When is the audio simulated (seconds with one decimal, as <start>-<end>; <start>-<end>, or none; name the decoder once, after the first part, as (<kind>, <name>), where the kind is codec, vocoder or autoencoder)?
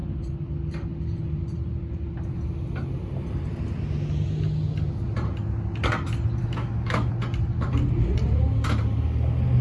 6.4-7.1 (autoencoder, DAC-VAE)